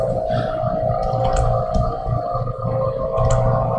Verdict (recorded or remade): recorded